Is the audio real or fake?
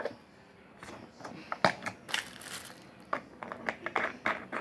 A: real